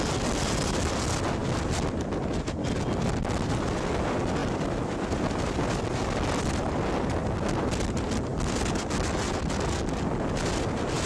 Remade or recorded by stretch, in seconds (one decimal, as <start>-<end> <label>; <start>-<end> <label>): 0.0-11.1 recorded

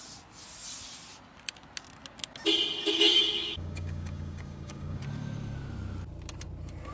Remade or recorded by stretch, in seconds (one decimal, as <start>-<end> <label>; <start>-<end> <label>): 0.0-2.9 recorded; 2.9-5.0 remade; 5.0-6.9 recorded